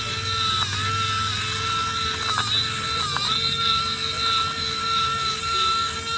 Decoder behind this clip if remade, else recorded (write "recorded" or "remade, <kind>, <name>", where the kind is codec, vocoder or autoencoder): recorded